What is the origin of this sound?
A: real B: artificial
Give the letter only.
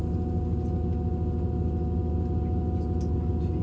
A